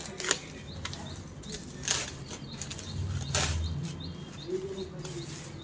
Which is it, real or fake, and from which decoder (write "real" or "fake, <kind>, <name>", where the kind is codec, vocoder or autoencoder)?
real